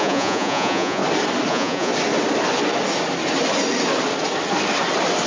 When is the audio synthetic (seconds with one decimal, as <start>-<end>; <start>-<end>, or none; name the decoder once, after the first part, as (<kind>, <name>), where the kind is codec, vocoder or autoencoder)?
0.0-1.0 (vocoder, Vocos); 1.5-1.9